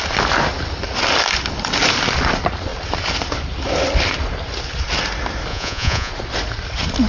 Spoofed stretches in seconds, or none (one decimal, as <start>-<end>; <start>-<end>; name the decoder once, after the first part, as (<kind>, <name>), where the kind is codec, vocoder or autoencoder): 5.5-6.1 (vocoder, Vocos)